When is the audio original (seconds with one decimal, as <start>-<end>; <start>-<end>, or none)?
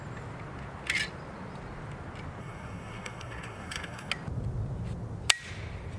0.0-2.4; 4.1-6.0